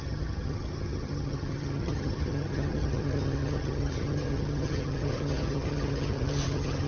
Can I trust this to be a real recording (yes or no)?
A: no